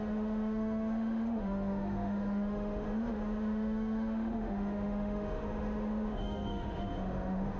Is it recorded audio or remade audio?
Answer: remade